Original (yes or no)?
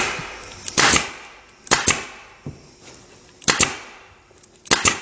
yes